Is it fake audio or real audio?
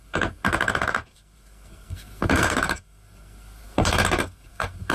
fake